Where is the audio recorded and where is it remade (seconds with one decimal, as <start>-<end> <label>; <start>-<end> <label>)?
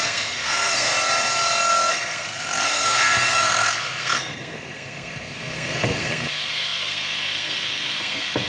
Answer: 0.0-0.9 remade; 0.9-1.9 recorded; 1.9-8.5 remade